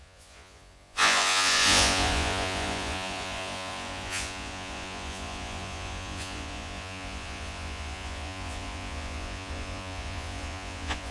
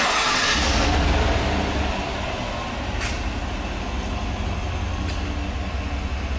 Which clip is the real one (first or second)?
second